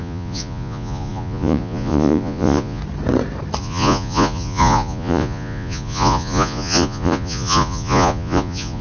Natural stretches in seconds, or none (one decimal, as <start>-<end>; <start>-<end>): 2.8-3.6